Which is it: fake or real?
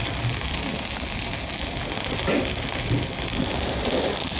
real